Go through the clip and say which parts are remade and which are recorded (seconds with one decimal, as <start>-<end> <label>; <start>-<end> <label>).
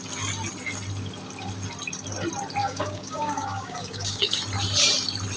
0.0-2.6 recorded; 2.6-4.4 remade; 4.4-5.4 recorded